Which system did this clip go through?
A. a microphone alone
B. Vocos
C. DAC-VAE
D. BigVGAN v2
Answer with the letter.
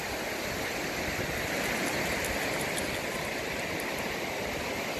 A